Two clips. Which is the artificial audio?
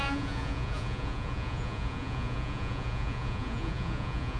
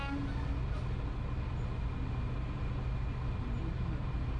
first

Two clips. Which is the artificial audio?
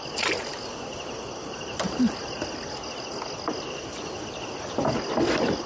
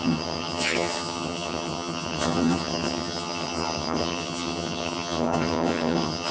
second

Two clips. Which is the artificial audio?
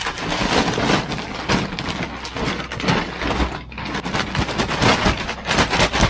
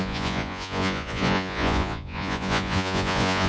second